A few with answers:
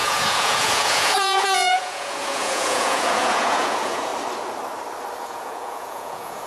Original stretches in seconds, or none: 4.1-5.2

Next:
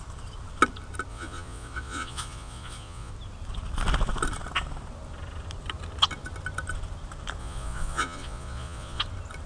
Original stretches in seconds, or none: 0.0-1.1; 3.1-7.4; 9.0-9.5

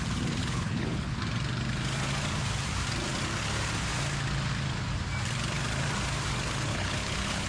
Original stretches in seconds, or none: 0.0-0.4; 1.2-6.7

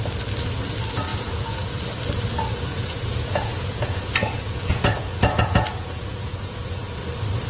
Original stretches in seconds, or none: 0.0-1.1; 1.8-2.7; 6.9-7.5

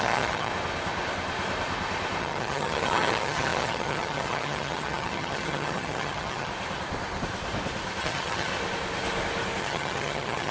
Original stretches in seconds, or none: 0.5-2.2; 6.5-8.0; 8.5-9.6

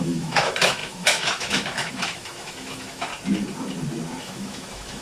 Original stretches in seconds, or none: 3.1-4.2

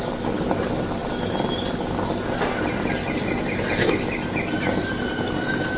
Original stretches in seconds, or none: 0.0-5.8

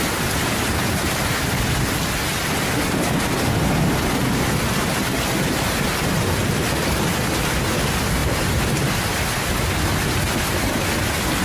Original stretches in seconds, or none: 0.0-11.4